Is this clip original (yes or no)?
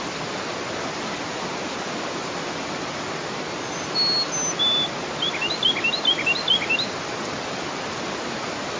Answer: yes